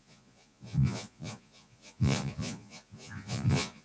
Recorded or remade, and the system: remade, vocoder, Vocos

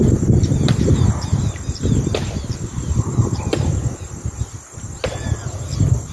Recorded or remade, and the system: recorded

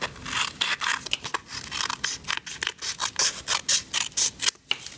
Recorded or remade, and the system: recorded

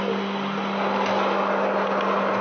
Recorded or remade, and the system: recorded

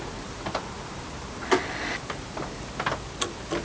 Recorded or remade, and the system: recorded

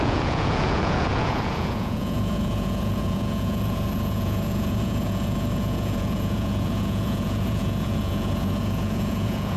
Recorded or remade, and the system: remade, vocoder, Vocos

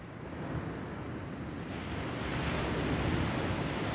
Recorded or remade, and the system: recorded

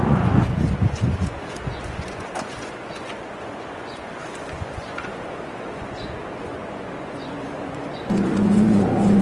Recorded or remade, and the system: remade, vocoder, Vocos